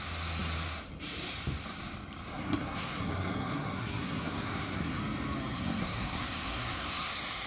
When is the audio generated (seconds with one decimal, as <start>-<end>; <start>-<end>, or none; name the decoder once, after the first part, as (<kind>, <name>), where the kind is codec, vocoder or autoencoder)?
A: 2.3-5.0 (codec, SNAC); 5.5-7.1